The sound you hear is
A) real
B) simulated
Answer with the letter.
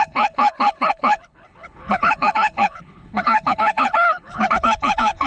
B